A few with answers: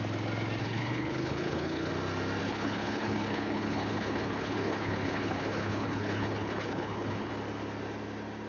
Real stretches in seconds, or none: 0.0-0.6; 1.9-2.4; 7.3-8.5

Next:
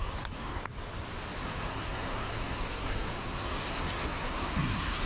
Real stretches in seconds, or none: 0.6-1.4